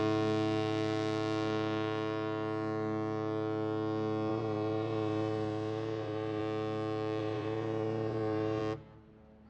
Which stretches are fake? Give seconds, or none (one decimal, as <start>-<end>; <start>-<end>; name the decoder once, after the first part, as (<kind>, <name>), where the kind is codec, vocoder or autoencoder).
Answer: 4.3-6.4 (vocoder, Vocos); 7.2-8.6

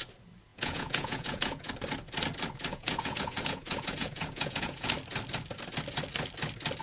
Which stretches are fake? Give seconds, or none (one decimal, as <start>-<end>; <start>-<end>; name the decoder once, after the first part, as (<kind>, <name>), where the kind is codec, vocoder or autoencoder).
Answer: 0.5-1.7 (vocoder, Vocos); 2.7-4.9

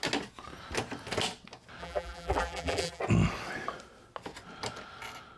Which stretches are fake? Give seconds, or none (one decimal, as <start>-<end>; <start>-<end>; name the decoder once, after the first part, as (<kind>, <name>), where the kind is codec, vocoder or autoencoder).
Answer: 1.8-3.0 (vocoder, BigVGAN v2)